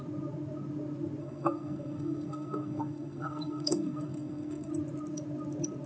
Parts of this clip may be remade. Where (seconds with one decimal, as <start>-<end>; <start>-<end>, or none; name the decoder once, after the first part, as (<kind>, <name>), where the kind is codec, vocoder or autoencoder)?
1.2-4.7 (codec, SNAC)